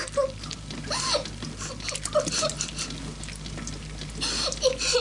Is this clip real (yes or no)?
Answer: yes